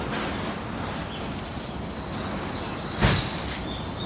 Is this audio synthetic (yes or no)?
no